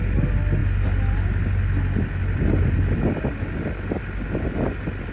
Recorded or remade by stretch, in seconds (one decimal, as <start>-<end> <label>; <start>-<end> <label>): 0.0-5.1 recorded